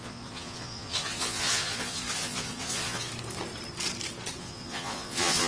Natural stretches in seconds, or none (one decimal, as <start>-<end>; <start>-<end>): 3.1-4.4